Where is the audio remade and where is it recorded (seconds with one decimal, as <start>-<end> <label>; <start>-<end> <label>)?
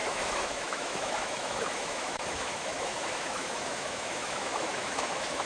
0.0-5.5 remade